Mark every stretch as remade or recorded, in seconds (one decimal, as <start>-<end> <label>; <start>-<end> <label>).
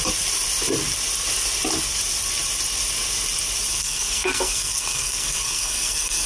0.0-3.7 recorded; 3.7-6.3 remade